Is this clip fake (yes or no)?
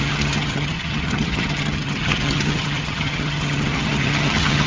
yes